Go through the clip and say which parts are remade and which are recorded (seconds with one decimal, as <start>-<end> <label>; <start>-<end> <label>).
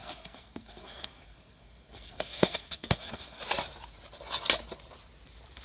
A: 0.0-3.4 remade; 3.4-5.6 recorded